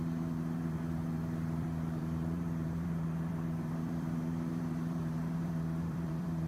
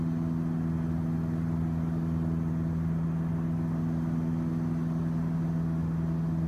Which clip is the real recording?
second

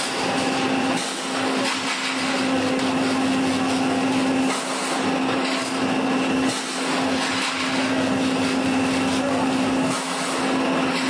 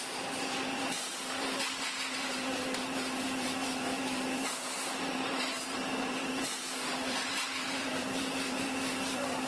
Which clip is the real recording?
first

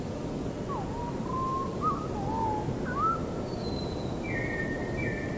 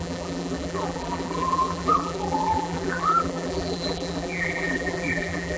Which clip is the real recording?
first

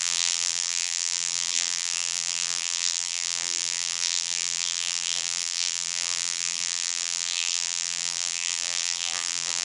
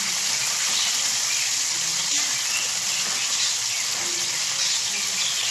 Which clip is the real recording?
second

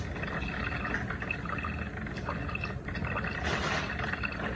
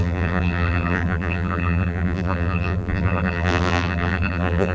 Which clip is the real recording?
first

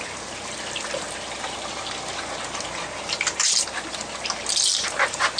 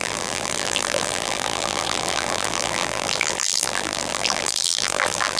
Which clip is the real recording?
first